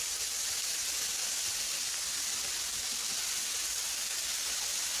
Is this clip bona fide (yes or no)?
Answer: yes